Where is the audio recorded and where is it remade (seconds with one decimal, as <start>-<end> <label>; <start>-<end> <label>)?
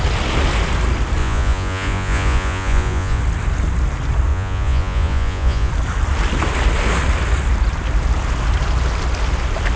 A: 0.0-1.2 recorded; 1.2-3.2 remade; 3.2-4.3 recorded; 4.3-5.7 remade; 5.7-9.8 recorded